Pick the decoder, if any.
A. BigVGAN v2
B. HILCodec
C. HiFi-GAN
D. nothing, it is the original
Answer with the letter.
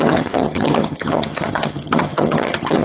C